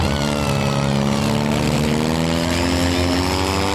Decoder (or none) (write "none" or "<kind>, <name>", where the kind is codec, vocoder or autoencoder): none